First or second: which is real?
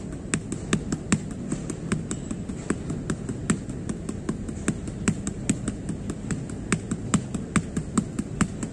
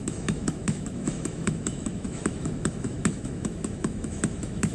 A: first